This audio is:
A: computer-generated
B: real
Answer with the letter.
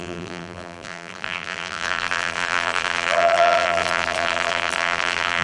A